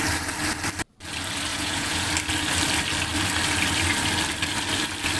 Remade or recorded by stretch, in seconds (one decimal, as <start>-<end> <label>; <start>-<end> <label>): 0.0-1.5 recorded; 1.5-2.1 remade; 2.1-5.2 recorded